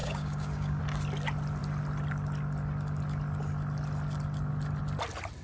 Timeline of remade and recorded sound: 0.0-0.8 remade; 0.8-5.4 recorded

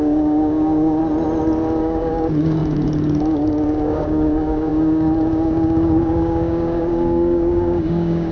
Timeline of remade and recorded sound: 0.0-1.0 remade; 1.0-1.8 recorded; 1.8-8.3 remade